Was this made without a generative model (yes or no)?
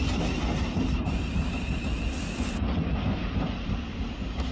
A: yes